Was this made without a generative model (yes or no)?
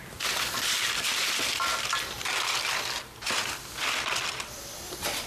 no